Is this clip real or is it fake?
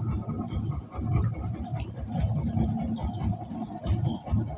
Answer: real